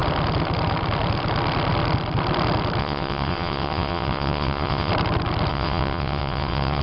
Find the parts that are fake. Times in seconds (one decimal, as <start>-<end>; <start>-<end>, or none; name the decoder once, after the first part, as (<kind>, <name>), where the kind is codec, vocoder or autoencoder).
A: 2.8-4.9 (vocoder, WaveNeXt); 5.5-6.8